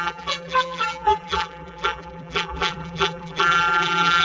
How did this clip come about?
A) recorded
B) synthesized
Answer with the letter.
B